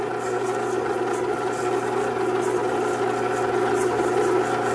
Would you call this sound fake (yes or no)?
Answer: no